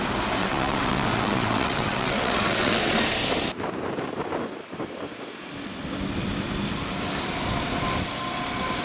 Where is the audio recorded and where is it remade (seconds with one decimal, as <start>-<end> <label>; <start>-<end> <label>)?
0.0-0.4 recorded; 0.4-2.8 remade; 2.8-8.8 recorded